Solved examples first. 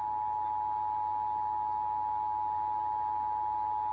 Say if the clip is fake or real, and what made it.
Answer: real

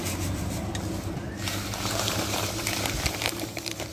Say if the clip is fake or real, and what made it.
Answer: fake, vocoder, BigVGAN v2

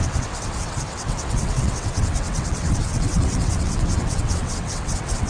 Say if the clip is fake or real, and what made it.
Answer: fake, vocoder, WaveNeXt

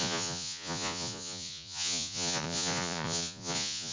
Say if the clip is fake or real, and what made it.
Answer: fake, vocoder, Vocos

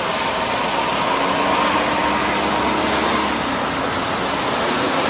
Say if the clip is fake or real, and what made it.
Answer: real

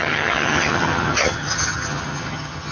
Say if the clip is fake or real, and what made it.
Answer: fake, vocoder, HiFi-GAN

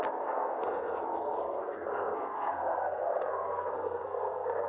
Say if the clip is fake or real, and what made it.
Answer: fake, codec, SNAC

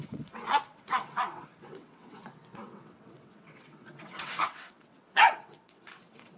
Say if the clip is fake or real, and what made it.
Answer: fake, vocoder, WaveNeXt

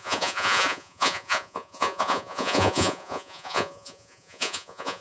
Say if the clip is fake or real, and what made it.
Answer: fake, vocoder, Vocos